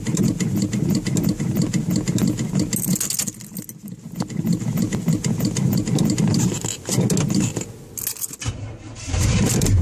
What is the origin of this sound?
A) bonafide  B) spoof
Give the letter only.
A